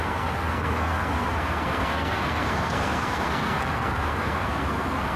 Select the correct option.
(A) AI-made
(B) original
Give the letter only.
A